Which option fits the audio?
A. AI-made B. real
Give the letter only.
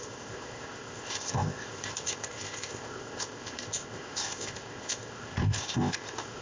A